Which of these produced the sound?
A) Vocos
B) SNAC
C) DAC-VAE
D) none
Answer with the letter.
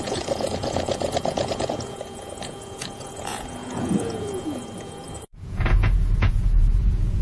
A